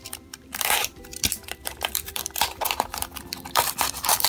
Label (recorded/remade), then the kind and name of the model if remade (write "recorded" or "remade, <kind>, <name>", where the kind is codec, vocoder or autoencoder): remade, vocoder, BigVGAN v2